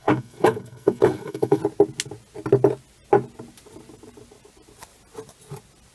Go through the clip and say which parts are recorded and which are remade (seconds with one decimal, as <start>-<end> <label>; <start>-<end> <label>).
0.0-1.6 remade; 1.6-5.9 recorded